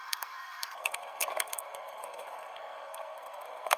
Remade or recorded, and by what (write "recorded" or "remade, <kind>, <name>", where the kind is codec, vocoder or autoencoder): remade, codec, SNAC